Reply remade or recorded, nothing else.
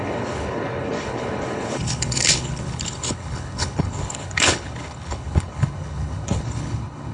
remade